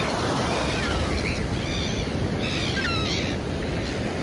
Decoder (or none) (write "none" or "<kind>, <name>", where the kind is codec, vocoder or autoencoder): vocoder, BigVGAN v2